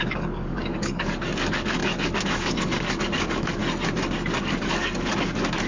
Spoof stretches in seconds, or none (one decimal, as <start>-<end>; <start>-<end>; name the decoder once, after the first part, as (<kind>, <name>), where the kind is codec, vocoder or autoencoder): 0.0-3.6 (codec, DAC); 4.4-5.7